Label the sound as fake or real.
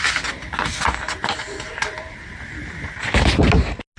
real